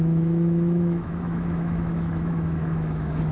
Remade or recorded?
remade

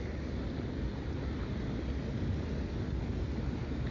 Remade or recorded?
recorded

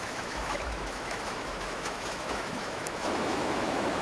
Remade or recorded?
remade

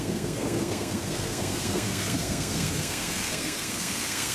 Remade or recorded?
remade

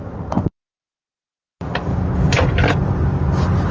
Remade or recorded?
recorded